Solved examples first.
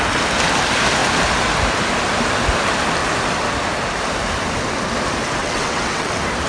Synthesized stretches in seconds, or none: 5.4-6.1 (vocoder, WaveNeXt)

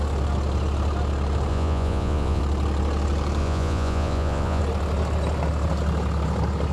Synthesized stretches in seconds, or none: 1.5-2.4 (vocoder, Vocos); 3.4-4.6

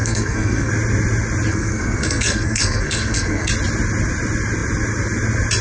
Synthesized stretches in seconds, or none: 0.0-0.7 (codec, SNAC); 1.5-3.5

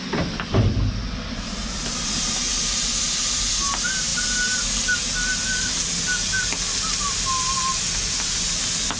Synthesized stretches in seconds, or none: none